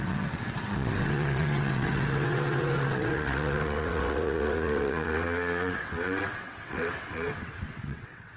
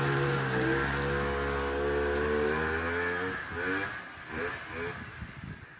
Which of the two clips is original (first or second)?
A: second